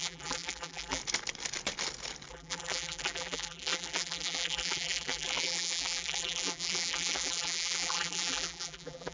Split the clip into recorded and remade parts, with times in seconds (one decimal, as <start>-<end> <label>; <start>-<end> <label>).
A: 0.0-1.0 remade; 1.0-2.3 recorded; 2.3-9.1 remade